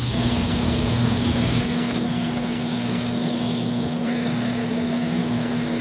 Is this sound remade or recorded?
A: remade